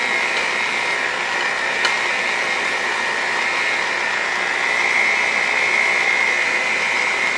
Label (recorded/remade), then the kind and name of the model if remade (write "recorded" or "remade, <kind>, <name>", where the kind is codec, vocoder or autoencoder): recorded